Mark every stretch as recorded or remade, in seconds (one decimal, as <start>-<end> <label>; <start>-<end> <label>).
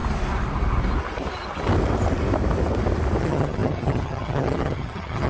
0.0-3.2 recorded; 3.2-5.3 remade